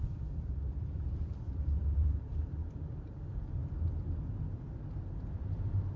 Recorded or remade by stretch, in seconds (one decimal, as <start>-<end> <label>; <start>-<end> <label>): 0.0-3.6 remade; 3.6-4.4 recorded; 4.4-6.0 remade